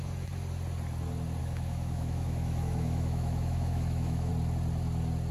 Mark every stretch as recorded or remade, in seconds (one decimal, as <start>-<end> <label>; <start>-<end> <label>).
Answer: 0.0-1.4 recorded; 1.4-4.3 remade; 4.3-5.3 recorded